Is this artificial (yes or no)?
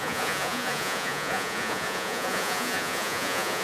yes